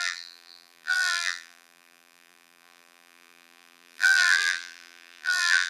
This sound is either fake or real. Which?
fake